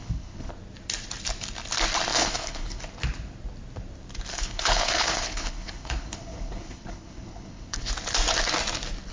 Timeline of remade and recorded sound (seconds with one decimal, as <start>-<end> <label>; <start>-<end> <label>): 0.0-0.5 remade; 0.5-2.1 recorded; 2.1-2.8 remade; 2.8-4.3 recorded; 4.3-7.9 remade; 7.9-9.1 recorded